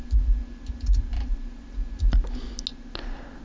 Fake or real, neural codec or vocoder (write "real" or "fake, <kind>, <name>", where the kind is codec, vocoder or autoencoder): real